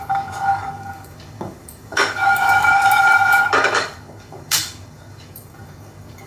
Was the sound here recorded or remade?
remade